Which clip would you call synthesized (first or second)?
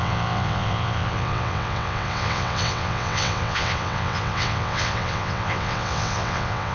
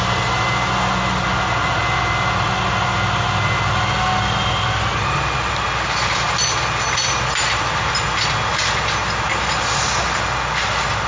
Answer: first